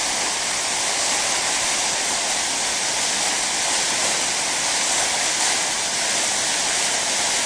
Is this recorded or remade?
recorded